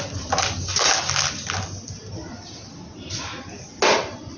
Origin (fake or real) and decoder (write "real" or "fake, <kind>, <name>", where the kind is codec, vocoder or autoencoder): real